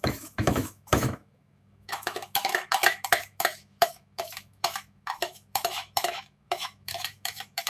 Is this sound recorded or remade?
remade